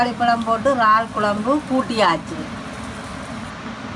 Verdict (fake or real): real